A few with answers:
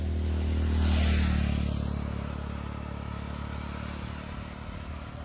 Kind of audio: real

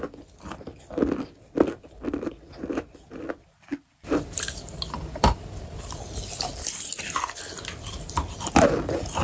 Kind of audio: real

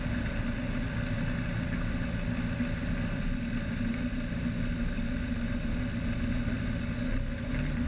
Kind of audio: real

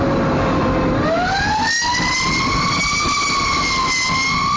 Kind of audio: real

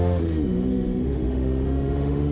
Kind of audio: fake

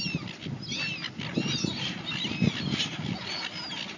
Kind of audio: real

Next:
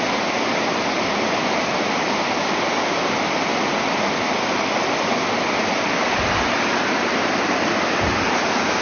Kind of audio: real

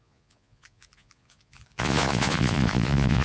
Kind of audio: fake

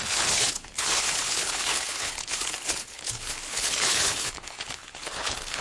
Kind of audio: fake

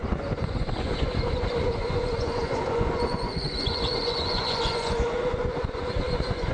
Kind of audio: fake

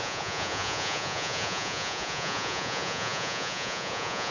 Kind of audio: fake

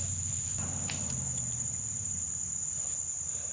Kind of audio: fake